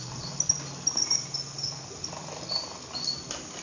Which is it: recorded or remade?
recorded